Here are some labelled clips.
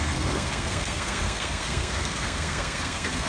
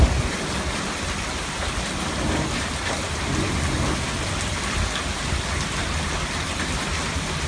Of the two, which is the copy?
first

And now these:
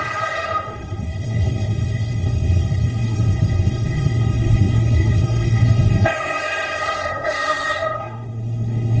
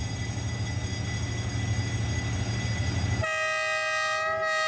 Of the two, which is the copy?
first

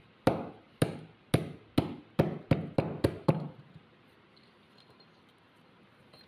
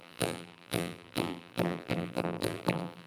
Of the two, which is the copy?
second